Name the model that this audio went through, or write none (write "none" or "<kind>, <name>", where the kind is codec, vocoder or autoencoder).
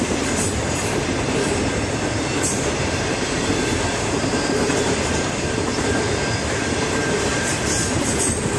vocoder, BigVGAN v2